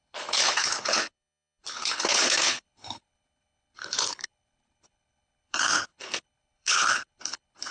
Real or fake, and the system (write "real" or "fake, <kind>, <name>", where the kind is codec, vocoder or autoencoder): fake, codec, HILCodec